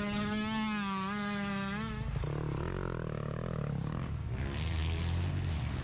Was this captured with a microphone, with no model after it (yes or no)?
yes